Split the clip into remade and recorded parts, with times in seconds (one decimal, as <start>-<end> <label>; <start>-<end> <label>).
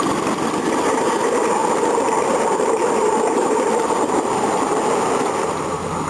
0.0-1.6 recorded; 1.6-5.3 remade; 5.3-6.1 recorded